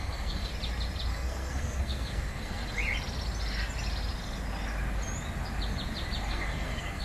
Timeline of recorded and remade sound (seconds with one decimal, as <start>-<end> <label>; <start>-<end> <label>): 0.0-0.5 remade; 0.5-1.1 recorded; 1.1-2.6 remade; 2.6-6.3 recorded; 6.3-7.0 remade